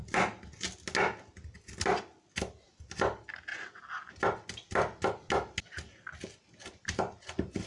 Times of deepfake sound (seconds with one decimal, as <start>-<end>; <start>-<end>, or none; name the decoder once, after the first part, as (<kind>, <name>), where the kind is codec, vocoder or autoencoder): none